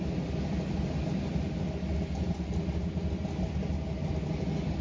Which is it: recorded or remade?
recorded